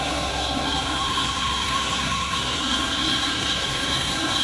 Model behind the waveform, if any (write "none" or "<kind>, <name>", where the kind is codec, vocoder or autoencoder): codec, SNAC